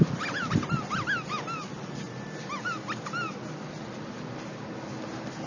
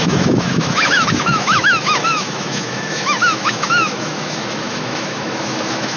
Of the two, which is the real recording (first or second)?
first